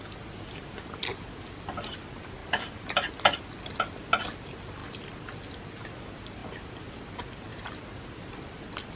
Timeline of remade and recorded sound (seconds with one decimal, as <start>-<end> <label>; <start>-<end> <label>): 0.0-2.4 recorded; 2.4-3.1 remade; 3.1-6.4 recorded; 6.4-6.9 remade; 6.9-7.5 recorded; 7.5-8.0 remade; 8.0-9.0 recorded